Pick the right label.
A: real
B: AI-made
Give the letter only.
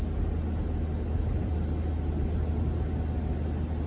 A